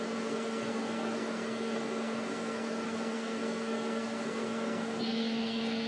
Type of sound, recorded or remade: remade